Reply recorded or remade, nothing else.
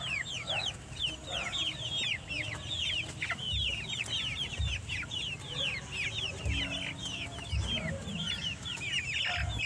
recorded